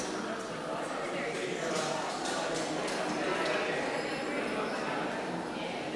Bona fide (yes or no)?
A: yes